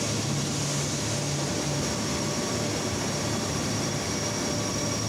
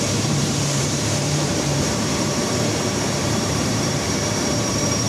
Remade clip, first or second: second